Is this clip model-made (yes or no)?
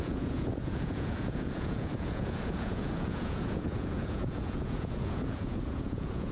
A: yes